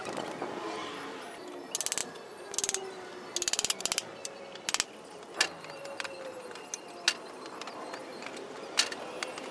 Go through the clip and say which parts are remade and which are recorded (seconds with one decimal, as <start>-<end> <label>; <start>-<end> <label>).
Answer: 0.0-9.5 recorded